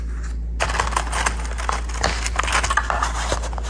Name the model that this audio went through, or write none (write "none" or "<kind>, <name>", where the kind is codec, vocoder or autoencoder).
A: none